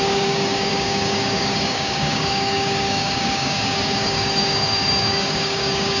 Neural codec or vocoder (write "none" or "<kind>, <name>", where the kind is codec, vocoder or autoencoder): codec, DAC